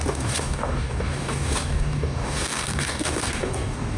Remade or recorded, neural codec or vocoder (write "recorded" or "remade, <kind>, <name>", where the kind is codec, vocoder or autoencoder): remade, codec, DAC